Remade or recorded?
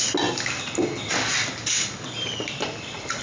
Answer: recorded